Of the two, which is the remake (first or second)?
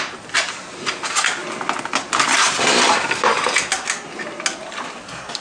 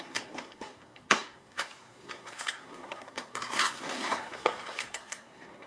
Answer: second